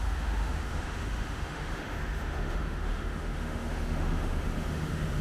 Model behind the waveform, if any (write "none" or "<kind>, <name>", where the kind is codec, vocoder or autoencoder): autoencoder, DAC-VAE